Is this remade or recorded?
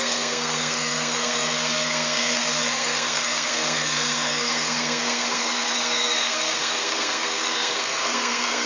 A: remade